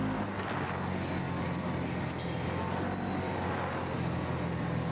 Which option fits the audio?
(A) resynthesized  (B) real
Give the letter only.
B